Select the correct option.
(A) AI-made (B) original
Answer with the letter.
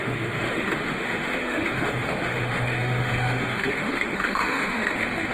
A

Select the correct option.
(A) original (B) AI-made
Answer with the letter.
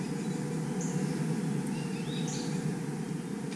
A